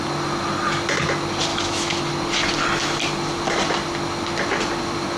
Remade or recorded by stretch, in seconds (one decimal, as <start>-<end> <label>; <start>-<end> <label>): 0.0-1.5 recorded; 1.5-2.0 remade; 2.0-5.2 recorded

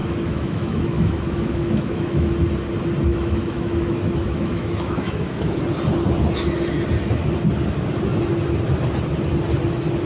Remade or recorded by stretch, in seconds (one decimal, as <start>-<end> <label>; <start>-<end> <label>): 0.0-2.3 remade; 2.3-3.1 recorded; 3.1-5.6 remade; 5.6-10.1 recorded

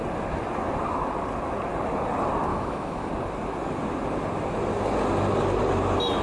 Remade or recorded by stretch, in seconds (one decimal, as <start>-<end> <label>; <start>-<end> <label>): 0.0-2.5 recorded; 2.5-3.1 remade; 3.1-6.2 recorded

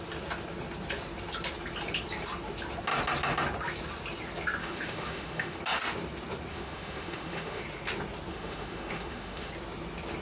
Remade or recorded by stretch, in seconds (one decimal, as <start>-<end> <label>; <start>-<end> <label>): 0.0-4.6 recorded; 4.6-5.6 remade; 5.6-6.5 recorded; 6.5-7.6 remade; 7.6-8.3 recorded; 8.3-9.5 remade; 9.5-10.2 recorded

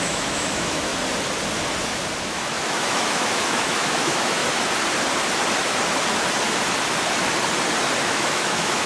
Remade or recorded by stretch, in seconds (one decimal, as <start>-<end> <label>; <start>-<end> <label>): 0.0-0.9 remade; 0.9-2.2 recorded; 2.2-4.4 remade; 4.4-8.0 recorded; 8.0-8.9 remade

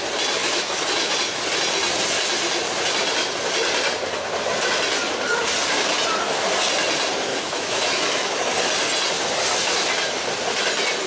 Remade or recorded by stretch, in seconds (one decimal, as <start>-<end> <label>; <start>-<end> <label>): 0.0-0.4 recorded; 0.4-1.2 remade; 1.2-7.3 recorded; 7.3-8.5 remade; 8.5-11.1 recorded

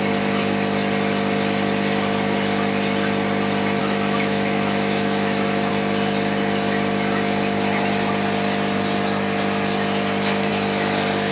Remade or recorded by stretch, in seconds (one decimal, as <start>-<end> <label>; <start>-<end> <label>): 0.0-3.8 recorded; 3.8-5.7 remade; 5.7-11.3 recorded

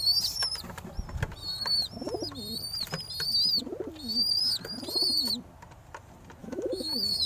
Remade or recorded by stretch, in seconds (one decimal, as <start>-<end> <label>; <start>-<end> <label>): 0.0-6.4 recorded; 6.4-7.3 remade